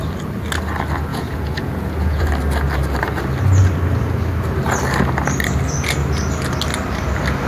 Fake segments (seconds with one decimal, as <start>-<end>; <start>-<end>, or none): 1.1-2.3